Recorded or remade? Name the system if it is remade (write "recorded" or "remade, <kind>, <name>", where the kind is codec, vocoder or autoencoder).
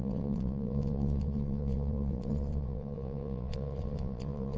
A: remade, vocoder, WaveNeXt